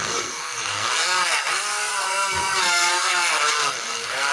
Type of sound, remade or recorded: remade